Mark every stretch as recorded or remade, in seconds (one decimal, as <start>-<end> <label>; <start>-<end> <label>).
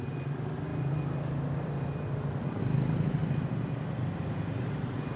0.0-0.7 recorded; 0.7-2.6 remade; 2.6-5.2 recorded